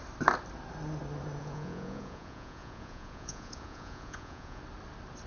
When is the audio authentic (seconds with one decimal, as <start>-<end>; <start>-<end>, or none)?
0.0-1.4; 4.6-5.3